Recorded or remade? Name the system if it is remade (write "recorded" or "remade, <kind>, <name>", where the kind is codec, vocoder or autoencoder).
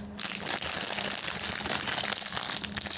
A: recorded